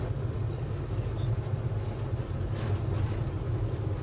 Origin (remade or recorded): recorded